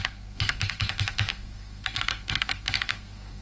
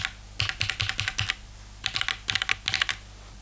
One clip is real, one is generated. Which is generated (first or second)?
first